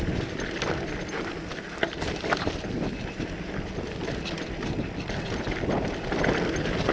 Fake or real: real